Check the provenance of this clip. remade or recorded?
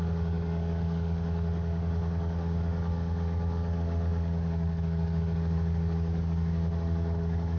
remade